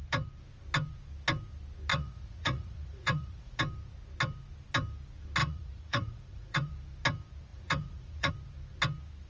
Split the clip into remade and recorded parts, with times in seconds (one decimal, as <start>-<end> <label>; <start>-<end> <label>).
0.0-1.9 recorded; 1.9-3.6 remade; 3.6-5.4 recorded; 5.4-6.7 remade; 6.7-7.5 recorded; 7.5-8.3 remade; 8.3-9.3 recorded